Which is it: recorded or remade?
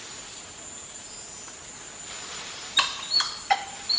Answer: recorded